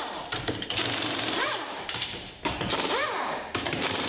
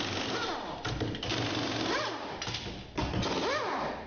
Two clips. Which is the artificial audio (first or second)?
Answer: first